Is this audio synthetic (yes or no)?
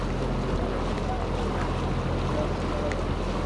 no